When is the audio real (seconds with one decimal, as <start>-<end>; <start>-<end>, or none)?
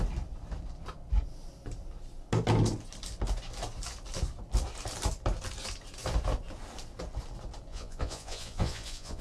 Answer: 0.0-7.7